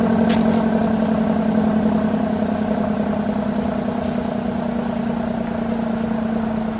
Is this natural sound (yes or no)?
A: yes